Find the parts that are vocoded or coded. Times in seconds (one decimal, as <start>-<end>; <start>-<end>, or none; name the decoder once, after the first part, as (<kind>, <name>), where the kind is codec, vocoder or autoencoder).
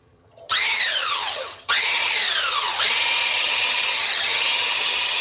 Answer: 0.0-2.0 (vocoder, HiFi-GAN); 3.3-5.2